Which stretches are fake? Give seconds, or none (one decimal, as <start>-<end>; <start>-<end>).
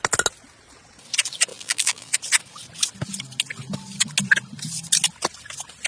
1.5-2.1